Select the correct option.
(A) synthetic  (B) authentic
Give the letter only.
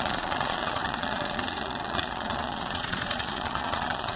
A